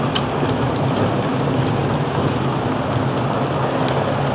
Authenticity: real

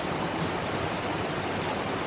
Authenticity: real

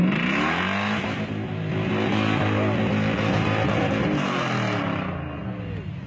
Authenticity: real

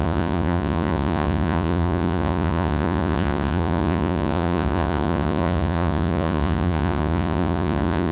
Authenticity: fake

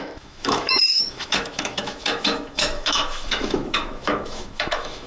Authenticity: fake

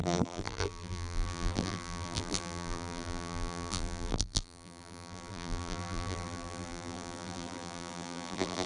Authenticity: fake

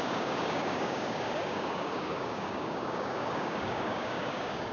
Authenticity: fake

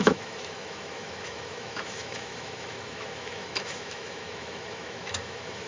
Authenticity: fake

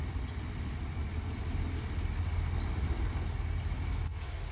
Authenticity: real